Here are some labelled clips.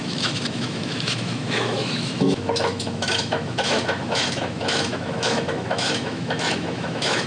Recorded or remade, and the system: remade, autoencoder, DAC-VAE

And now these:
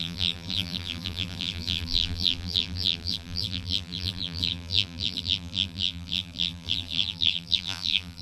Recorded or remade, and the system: remade, vocoder, BigVGAN v2